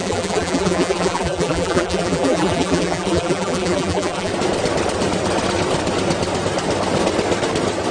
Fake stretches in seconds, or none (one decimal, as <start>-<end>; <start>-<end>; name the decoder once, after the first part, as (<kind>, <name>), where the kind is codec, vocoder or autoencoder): 0.0-4.3 (vocoder, BigVGAN v2)